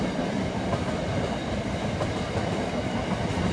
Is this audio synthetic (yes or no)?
no